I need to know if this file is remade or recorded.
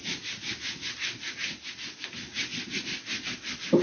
recorded